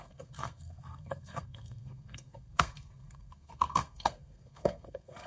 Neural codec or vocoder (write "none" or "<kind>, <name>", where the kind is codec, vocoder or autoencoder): codec, SNAC